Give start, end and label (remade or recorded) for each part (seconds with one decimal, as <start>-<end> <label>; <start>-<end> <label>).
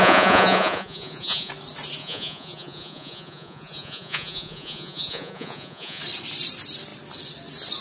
0.0-1.5 remade; 1.5-2.0 recorded; 2.0-6.0 remade; 6.0-7.8 recorded